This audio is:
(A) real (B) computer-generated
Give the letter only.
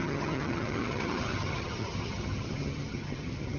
B